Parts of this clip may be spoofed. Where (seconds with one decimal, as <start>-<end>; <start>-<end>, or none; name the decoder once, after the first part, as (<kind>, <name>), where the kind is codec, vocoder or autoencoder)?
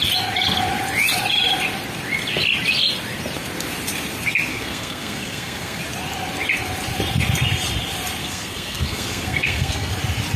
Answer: 4.5-5.8 (codec, SNAC); 8.2-9.9